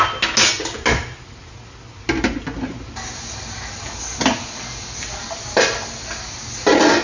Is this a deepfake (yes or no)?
no